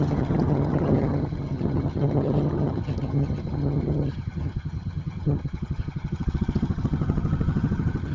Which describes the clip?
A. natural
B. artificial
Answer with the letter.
B